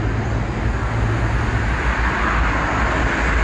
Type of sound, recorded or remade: recorded